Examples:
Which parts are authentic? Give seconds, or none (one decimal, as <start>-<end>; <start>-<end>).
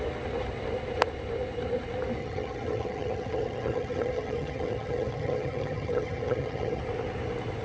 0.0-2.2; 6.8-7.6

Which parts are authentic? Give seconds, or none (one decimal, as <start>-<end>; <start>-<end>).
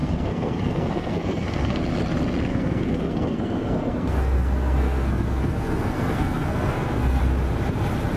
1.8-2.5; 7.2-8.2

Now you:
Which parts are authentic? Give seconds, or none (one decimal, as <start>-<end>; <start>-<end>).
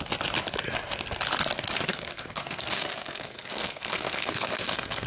0.0-1.9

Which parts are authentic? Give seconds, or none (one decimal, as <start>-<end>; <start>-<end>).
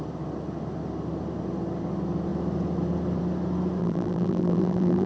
0.0-3.8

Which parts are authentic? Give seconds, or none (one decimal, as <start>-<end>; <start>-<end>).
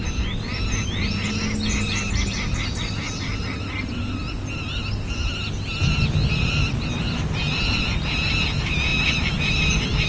0.0-10.1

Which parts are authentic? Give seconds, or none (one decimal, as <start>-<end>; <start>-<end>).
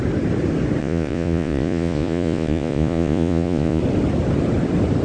0.0-0.8; 3.8-5.0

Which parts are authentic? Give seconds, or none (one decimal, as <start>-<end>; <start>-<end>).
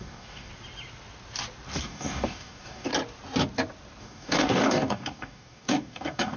0.5-1.8; 2.9-4.0